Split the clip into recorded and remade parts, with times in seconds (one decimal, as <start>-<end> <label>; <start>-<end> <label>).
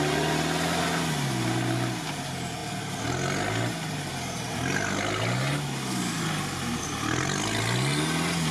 0.0-8.5 recorded